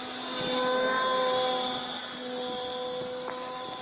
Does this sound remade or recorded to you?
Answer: recorded